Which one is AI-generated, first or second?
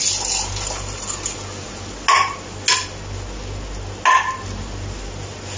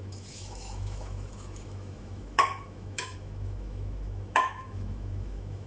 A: second